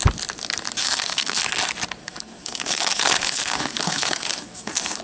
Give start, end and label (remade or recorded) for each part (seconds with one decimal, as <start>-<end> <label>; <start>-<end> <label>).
0.0-0.8 recorded; 0.8-1.4 remade; 1.4-2.0 recorded; 2.0-5.0 remade